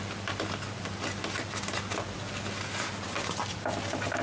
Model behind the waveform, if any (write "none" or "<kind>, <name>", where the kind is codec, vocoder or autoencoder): none